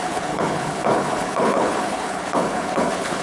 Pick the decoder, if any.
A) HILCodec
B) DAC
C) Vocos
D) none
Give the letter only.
A